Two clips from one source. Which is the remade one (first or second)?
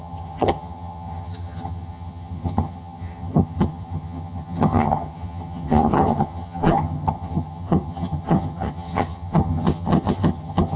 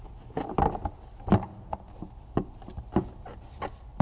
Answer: first